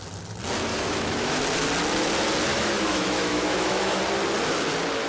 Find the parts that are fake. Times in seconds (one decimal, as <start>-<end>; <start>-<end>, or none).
0.7-1.4; 2.5-4.0